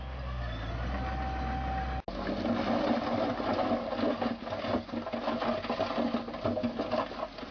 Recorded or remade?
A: recorded